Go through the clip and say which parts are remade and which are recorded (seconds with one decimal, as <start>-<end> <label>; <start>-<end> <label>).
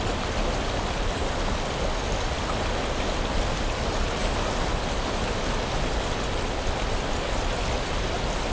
0.0-4.2 recorded; 4.2-5.9 remade; 5.9-8.5 recorded